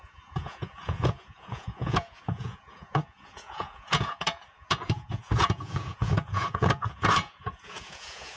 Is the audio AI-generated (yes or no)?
yes